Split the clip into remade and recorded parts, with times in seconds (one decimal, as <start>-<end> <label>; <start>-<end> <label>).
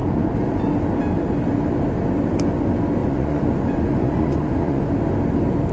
0.0-0.6 remade; 0.6-3.0 recorded; 3.0-4.9 remade; 4.9-5.7 recorded